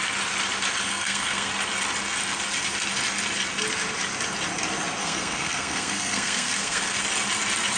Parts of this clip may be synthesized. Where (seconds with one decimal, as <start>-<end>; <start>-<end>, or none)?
0.9-1.5; 5.0-7.0